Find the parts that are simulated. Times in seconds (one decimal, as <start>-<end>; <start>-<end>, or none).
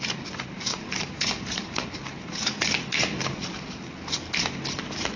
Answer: 0.0-0.7; 1.4-2.0